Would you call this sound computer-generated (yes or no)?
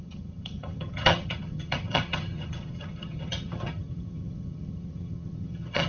yes